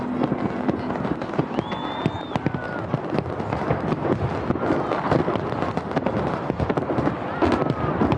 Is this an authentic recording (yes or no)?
yes